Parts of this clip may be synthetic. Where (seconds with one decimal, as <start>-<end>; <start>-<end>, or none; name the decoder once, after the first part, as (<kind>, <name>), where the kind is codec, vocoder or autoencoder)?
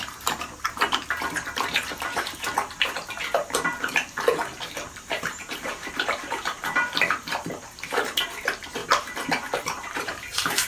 0.0-4.4 (vocoder, BigVGAN v2); 4.9-8.8; 9.5-10.7